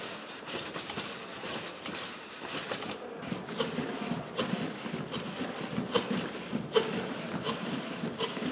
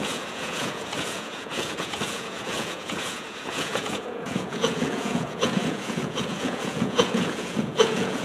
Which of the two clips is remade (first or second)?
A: second